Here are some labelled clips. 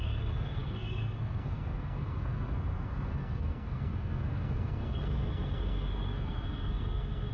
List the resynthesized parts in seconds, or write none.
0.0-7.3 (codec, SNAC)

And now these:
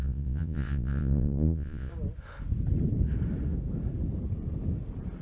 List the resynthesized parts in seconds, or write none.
0.0-1.9 (vocoder, Vocos)

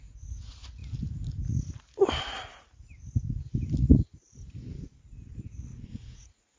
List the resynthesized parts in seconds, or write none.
0.0-0.8 (vocoder, Vocos); 2.2-2.7; 5.5-6.6

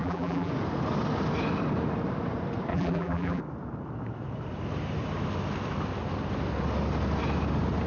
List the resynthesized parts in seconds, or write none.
0.0-0.5 (vocoder, BigVGAN v2); 2.7-3.4

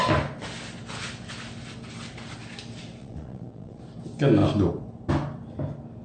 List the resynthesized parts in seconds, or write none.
3.0-3.8 (vocoder, Vocos)

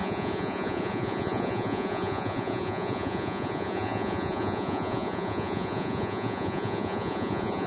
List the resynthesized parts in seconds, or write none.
0.0-7.7 (vocoder, Vocos)

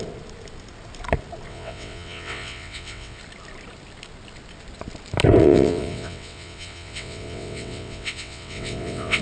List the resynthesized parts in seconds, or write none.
1.5-3.2 (vocoder, WaveNeXt); 5.4-9.2

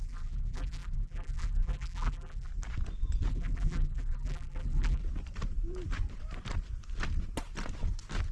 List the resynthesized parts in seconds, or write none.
0.0-2.5 (vocoder, BigVGAN v2); 3.3-5.0